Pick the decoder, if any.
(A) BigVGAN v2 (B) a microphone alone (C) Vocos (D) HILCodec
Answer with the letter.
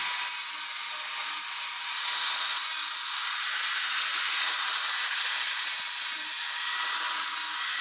B